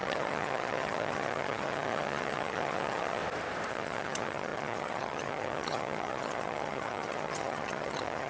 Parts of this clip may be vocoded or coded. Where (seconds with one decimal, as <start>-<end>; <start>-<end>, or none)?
0.0-3.2; 3.7-8.3